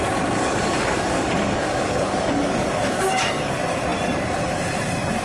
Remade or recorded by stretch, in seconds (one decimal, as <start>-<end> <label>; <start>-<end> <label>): 0.0-0.4 recorded; 0.4-3.5 remade; 3.5-5.2 recorded